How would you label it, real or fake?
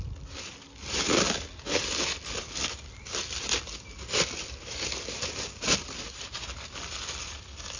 real